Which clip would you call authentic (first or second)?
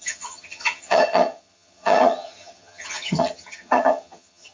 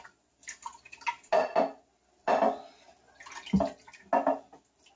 second